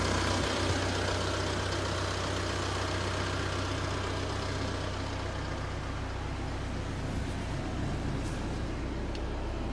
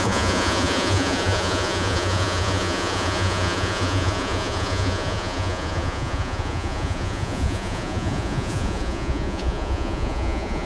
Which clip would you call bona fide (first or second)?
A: first